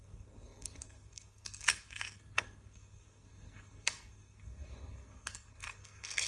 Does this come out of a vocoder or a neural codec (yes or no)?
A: yes